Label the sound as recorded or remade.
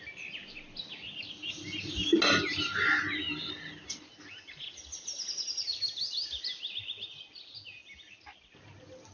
recorded